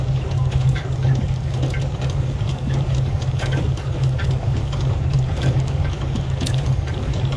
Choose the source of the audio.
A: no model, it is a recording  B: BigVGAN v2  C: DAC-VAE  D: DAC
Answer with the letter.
D